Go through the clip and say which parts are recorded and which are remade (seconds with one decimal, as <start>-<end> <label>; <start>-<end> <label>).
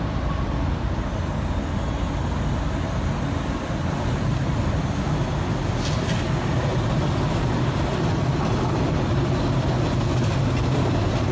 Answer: 0.0-11.3 recorded